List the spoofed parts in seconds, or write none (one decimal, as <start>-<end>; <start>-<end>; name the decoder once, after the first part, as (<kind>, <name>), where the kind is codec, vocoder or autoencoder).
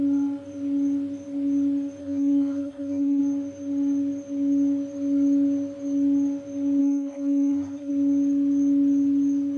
2.0-3.2 (codec, SNAC); 6.8-7.9